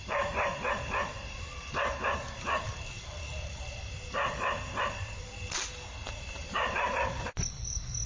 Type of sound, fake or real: fake